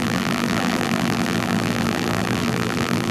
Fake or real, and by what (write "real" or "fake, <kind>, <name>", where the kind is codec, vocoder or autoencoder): fake, vocoder, BigVGAN v2